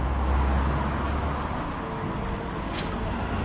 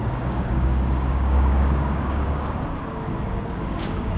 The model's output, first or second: second